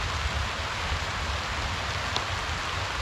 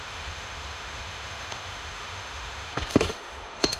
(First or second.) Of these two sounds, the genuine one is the first